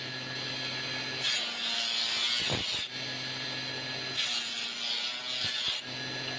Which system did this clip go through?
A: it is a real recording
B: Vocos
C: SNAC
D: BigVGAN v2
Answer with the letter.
A